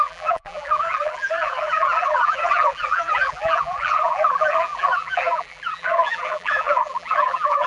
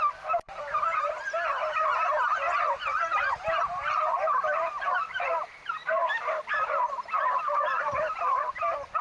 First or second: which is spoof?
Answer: first